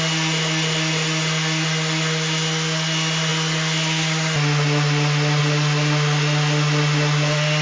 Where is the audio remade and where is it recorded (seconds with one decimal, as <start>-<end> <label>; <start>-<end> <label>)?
0.0-7.6 recorded